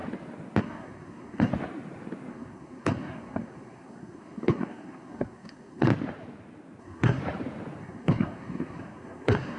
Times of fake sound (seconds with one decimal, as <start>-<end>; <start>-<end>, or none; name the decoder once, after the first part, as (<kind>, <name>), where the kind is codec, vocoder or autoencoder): 0.6-1.5 (codec, SNAC); 2.3-5.9; 6.8-7.2; 7.8-9.6